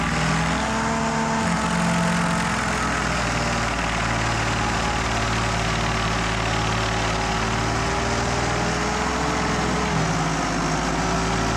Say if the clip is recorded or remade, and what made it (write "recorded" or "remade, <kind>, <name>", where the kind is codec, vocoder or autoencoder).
recorded